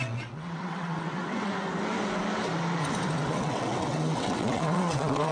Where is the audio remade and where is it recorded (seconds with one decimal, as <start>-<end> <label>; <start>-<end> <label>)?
0.0-1.5 remade; 1.5-3.3 recorded; 3.3-5.3 remade